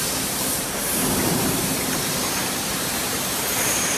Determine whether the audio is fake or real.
fake